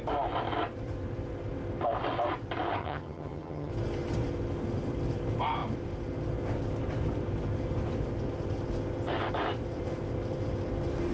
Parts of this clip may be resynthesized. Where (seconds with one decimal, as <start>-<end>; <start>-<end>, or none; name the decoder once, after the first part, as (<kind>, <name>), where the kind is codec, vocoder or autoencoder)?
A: 2.8-3.7 (vocoder, HiFi-GAN)